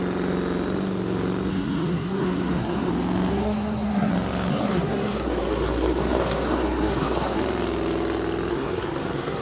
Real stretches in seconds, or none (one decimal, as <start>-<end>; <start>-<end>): 0.0-1.5; 2.9-3.3; 4.1-4.5; 7.4-8.5